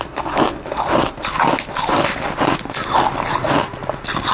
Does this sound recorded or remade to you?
recorded